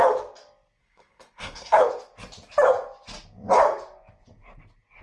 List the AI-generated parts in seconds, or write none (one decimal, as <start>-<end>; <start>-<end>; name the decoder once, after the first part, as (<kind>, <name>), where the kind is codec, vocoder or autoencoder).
0.8-1.8 (codec, SNAC)